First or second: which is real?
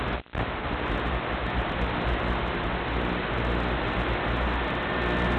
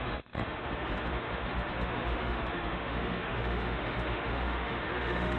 first